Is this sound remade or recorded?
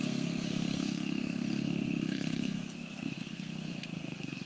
remade